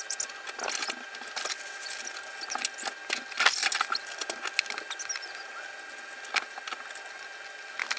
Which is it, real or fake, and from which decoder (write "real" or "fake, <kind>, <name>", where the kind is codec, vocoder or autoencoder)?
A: real